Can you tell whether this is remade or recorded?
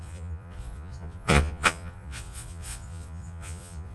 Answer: remade